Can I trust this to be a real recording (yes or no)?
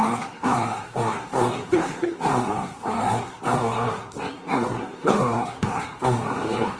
no